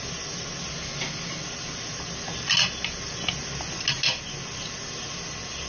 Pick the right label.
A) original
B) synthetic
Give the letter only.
A